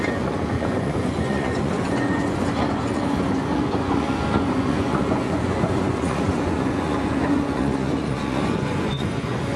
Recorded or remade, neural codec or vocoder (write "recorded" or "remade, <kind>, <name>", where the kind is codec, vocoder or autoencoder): remade, vocoder, Vocos